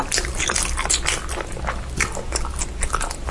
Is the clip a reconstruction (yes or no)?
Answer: no